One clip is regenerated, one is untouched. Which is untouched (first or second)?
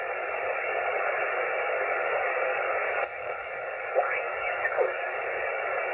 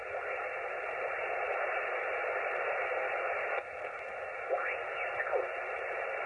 second